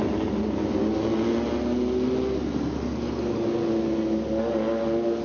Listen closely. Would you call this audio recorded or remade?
recorded